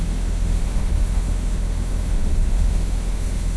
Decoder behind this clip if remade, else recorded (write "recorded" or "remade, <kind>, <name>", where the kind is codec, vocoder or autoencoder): remade, autoencoder, DAC-VAE